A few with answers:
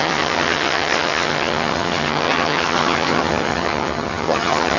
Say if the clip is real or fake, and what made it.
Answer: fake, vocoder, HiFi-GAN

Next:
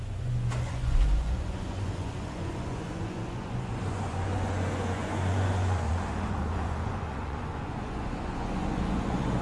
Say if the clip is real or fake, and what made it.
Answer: fake, vocoder, Vocos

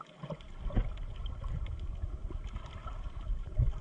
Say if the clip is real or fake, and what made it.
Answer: real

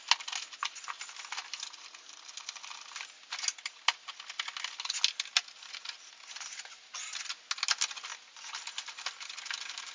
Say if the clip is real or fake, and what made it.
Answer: real